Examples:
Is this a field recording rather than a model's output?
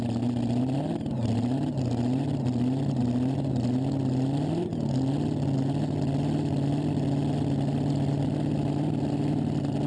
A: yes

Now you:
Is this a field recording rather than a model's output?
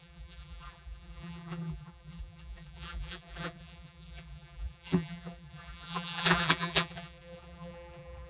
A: no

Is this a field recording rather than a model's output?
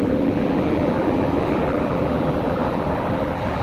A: no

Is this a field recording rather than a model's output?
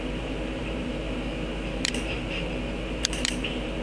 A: no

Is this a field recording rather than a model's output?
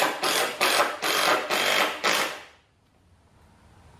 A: yes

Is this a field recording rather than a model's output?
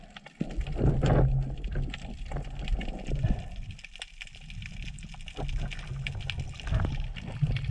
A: yes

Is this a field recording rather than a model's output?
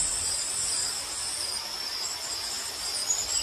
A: no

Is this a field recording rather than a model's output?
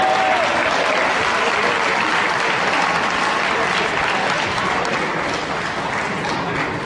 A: yes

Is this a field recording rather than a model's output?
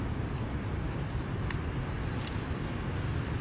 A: yes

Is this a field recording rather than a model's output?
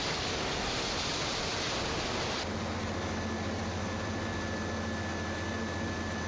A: yes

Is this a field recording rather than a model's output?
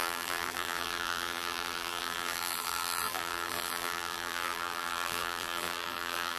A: no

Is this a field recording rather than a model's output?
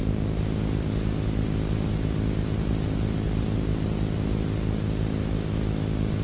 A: yes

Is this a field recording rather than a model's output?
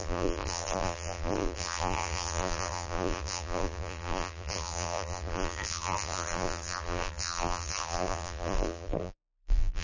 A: no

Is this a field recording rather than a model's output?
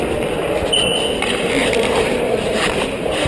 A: no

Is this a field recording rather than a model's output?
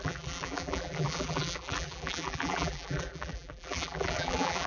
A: no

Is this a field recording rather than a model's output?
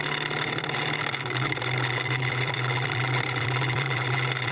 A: no